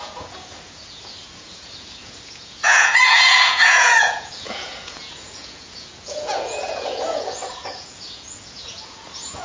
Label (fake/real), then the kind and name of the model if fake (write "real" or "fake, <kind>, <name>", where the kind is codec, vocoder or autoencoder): fake, vocoder, Vocos